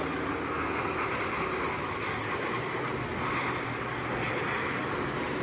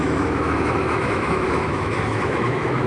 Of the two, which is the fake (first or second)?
second